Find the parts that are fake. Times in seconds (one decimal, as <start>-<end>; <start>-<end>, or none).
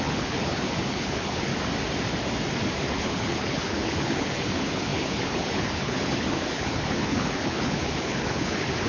0.0-1.5; 2.8-8.9